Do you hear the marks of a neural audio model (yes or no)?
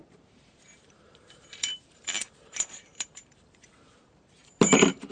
yes